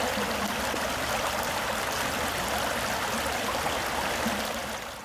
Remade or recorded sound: recorded